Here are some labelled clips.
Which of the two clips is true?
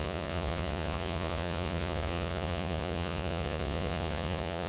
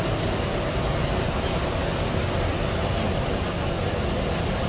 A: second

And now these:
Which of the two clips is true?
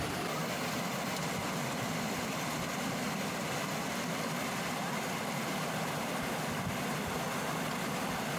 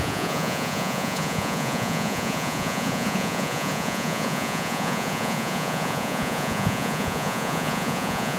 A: first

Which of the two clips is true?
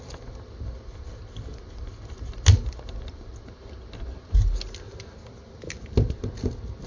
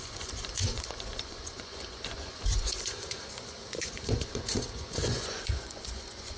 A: first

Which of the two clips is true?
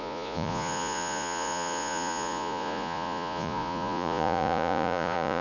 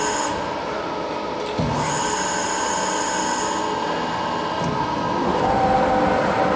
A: second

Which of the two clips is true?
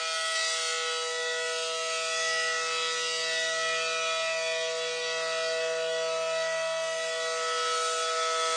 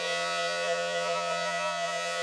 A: first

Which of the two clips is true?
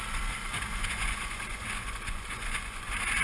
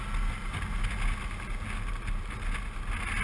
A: second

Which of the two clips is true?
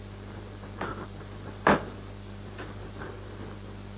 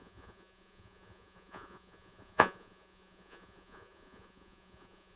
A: first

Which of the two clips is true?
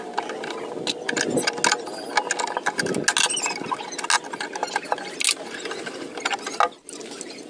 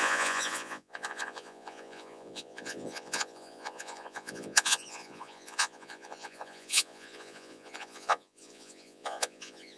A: first